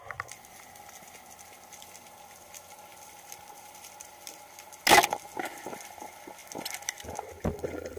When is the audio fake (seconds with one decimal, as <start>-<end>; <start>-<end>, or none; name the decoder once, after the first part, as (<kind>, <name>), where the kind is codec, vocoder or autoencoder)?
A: 2.9-4.4 (vocoder, BigVGAN v2)